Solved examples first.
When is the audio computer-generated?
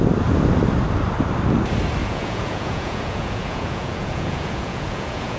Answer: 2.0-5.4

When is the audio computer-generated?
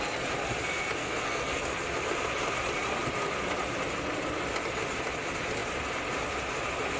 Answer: 1.0-1.6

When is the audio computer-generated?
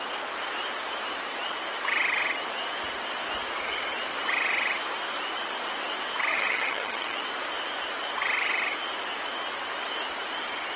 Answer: 6.3-7.2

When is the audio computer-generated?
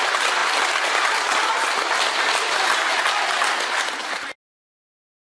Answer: none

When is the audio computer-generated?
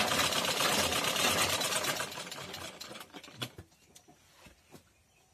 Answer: 0.9-3.6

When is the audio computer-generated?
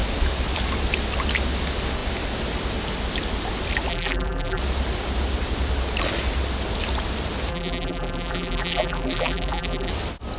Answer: 3.9-4.6; 7.5-9.9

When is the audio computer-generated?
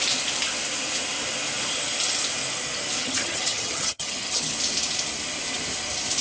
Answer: 3.0-4.5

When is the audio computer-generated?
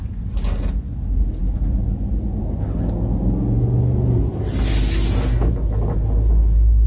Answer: none